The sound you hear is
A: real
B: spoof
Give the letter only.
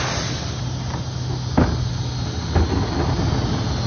A